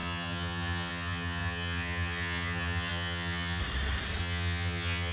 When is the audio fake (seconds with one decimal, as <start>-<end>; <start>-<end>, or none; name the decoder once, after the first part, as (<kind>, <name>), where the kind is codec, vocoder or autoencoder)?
0.0-3.6 (vocoder, HiFi-GAN); 4.2-5.1